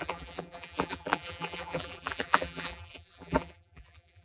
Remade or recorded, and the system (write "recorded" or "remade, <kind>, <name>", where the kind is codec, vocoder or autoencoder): remade, vocoder, BigVGAN v2